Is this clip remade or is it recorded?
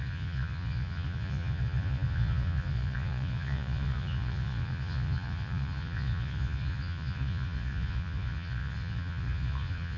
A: remade